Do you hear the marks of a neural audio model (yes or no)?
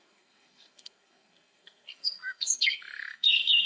yes